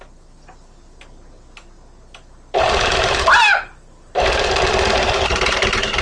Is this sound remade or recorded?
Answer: recorded